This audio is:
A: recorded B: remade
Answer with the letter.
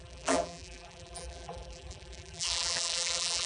B